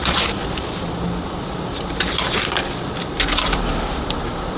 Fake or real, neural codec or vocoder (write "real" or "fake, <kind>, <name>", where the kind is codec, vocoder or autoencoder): real